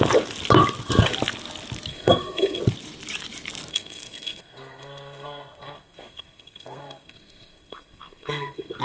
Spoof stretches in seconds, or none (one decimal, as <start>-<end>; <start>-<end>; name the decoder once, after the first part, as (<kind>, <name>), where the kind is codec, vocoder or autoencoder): 1.9-2.6 (codec, SNAC); 3.7-8.8

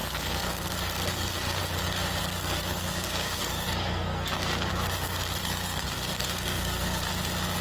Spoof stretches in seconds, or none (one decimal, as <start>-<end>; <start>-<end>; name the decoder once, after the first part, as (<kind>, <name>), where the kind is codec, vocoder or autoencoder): 0.0-1.6 (codec, SNAC); 2.2-4.7; 5.4-7.1

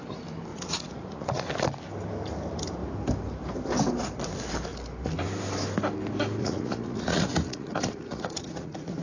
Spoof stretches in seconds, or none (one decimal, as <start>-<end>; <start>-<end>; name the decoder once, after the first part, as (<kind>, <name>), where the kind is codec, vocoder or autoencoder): 0.5-1.5 (vocoder, Vocos); 6.4-9.0